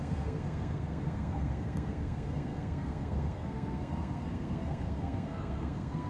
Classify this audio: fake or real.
fake